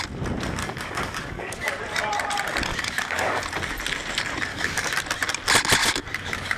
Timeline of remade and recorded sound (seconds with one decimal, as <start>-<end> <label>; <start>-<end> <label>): 0.0-0.6 recorded; 0.6-1.8 remade; 1.8-2.7 recorded; 2.7-3.4 remade; 3.4-4.5 recorded; 4.5-5.0 remade; 5.0-5.8 recorded; 5.8-6.6 remade